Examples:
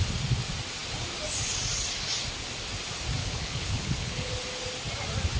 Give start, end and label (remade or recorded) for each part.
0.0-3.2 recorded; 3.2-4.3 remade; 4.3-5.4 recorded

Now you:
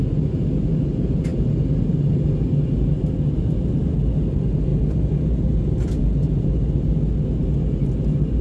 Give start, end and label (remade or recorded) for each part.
0.0-8.4 recorded

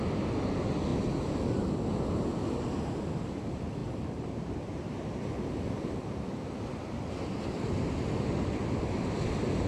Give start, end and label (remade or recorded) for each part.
0.0-3.8 recorded; 3.8-5.1 remade; 5.1-9.7 recorded

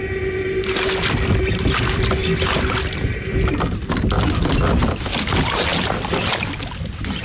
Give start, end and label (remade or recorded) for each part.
0.0-7.2 recorded

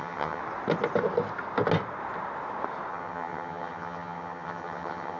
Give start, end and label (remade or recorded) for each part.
0.0-0.4 remade; 0.4-2.9 recorded; 2.9-5.2 remade

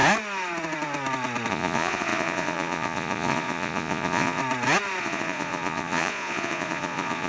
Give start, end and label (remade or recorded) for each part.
0.0-1.5 recorded; 1.5-4.4 remade; 4.4-5.0 recorded; 5.0-7.3 remade

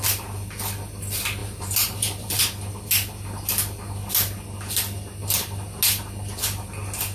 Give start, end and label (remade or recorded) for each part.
0.0-1.4 recorded; 1.4-2.4 remade; 2.4-7.1 recorded

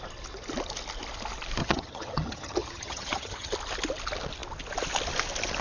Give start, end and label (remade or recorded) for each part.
0.0-1.6 recorded; 1.6-3.5 remade; 3.5-5.6 recorded